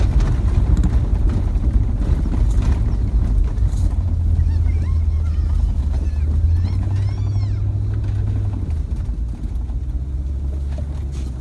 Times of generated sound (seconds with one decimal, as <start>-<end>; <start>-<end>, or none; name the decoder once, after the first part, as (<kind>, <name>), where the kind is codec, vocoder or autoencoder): 1.1-1.8 (vocoder, BigVGAN v2); 3.4-4.1